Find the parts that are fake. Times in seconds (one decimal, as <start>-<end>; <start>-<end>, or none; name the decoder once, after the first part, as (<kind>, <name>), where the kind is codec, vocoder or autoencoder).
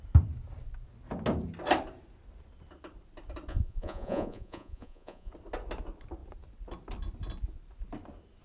3.5-5.3 (vocoder, Vocos)